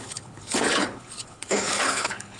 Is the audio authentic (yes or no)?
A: no